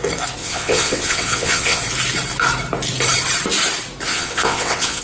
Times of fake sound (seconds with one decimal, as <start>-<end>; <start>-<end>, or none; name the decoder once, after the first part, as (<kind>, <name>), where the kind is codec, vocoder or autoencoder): 0.4-1.8 (vocoder, WaveNeXt); 4.1-5.0